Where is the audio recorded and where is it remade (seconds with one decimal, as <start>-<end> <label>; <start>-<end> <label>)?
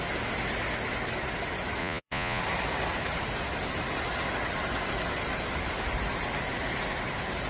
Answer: 0.0-1.8 recorded; 1.8-2.4 remade; 2.4-7.5 recorded